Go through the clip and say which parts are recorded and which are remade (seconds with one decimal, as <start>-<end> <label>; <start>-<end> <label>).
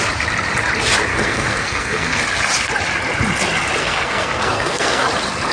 0.0-1.1 recorded; 1.1-2.2 remade; 2.2-3.8 recorded; 3.8-5.1 remade; 5.1-5.5 recorded